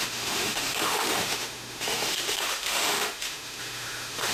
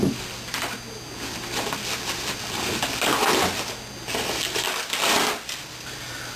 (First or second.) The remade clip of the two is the first